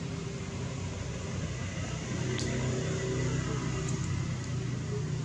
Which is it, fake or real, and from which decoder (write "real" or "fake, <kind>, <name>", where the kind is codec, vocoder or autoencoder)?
real